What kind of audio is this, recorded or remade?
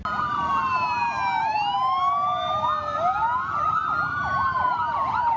recorded